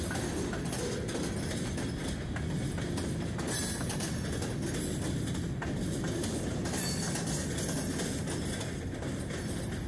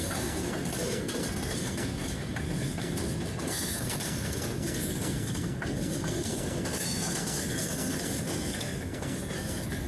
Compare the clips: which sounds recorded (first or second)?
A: first